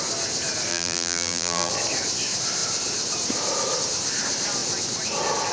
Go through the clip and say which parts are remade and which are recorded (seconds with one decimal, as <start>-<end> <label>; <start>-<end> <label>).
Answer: 0.0-0.7 recorded; 0.7-1.7 remade; 1.7-5.5 recorded

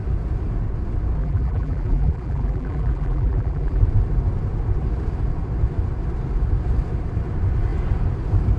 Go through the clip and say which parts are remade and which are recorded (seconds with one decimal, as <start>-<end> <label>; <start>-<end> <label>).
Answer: 0.0-1.2 recorded; 1.2-3.8 remade; 3.8-8.6 recorded

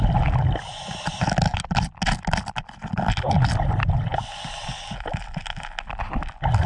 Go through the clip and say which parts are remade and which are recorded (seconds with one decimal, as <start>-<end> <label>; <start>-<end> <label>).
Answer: 0.0-6.7 recorded

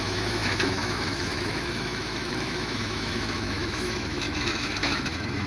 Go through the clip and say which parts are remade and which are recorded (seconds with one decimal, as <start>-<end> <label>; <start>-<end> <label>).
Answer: 0.0-5.5 remade

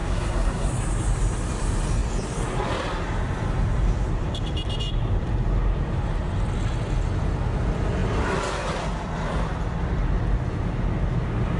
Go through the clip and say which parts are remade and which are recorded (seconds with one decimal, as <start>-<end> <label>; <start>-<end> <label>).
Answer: 0.0-0.7 remade; 0.7-11.6 recorded

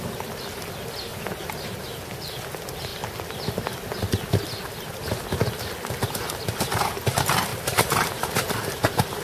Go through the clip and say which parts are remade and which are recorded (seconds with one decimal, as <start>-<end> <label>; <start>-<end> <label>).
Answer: 0.0-1.1 recorded; 1.1-2.0 remade; 2.0-7.5 recorded; 7.5-8.1 remade; 8.1-9.2 recorded

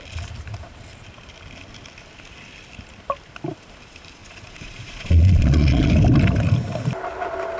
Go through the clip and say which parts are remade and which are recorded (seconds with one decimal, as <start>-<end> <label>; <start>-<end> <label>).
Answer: 0.0-4.2 recorded; 4.2-5.9 remade; 5.9-7.6 recorded